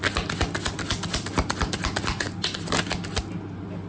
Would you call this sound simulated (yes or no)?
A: no